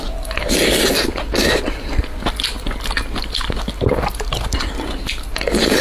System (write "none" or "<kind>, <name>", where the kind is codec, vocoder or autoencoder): none